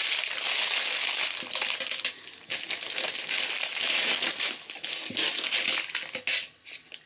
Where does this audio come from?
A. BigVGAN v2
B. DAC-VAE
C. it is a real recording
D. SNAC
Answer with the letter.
C